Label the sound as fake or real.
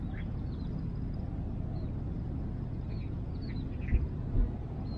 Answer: real